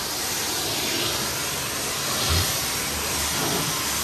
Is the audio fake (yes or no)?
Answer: no